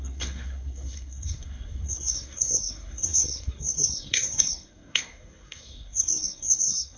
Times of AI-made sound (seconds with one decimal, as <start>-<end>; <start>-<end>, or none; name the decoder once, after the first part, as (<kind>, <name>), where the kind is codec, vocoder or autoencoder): 0.0-7.0 (codec, SNAC)